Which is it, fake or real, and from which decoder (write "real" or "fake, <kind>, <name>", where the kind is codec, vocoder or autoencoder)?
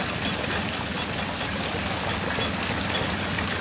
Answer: real